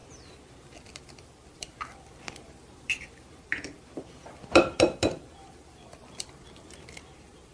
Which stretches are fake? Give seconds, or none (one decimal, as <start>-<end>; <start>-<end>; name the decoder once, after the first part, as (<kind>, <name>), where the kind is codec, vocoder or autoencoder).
0.0-7.5 (vocoder, BigVGAN v2)